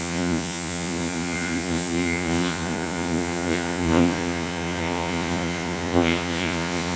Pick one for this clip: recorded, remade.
remade